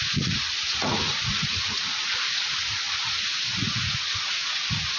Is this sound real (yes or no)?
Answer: no